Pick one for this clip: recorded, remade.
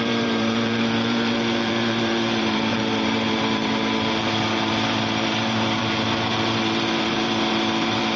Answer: remade